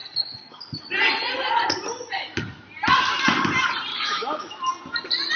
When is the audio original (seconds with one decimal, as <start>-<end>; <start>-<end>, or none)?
0.0-3.9; 4.7-5.4